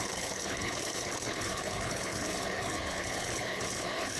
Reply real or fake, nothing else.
fake